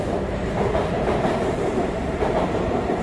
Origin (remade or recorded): remade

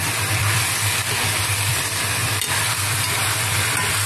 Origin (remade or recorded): remade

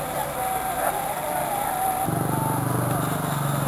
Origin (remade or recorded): recorded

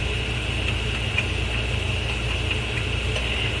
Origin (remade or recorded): recorded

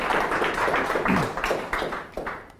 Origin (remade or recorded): remade